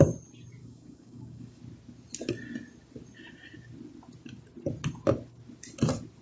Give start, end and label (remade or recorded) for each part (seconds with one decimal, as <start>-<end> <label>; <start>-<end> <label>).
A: 0.0-0.6 recorded; 0.6-1.6 remade; 1.6-6.2 recorded